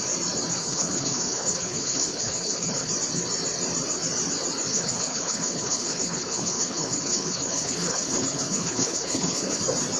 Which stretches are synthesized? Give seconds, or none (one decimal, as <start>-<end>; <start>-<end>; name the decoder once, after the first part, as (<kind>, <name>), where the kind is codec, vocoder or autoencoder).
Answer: 0.6-2.9 (codec, HILCodec); 4.7-9.6